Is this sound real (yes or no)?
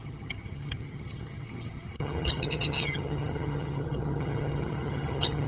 no